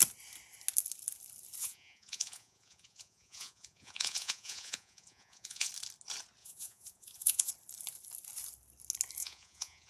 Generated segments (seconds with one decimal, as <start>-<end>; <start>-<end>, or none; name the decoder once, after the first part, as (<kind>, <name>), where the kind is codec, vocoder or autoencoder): 1.6-5.7 (vocoder, Vocos); 6.4-7.5; 9.2-9.9